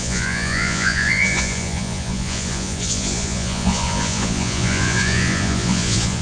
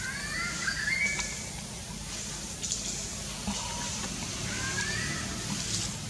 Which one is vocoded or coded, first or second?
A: first